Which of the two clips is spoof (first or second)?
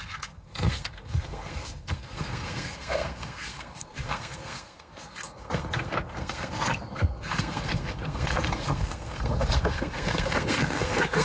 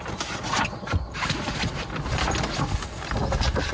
first